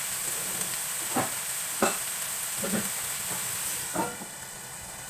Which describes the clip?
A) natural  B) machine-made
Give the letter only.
A